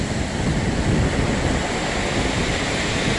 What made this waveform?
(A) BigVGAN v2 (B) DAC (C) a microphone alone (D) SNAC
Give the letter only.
C